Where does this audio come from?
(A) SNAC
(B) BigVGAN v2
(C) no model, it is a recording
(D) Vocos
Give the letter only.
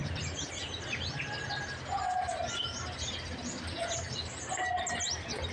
C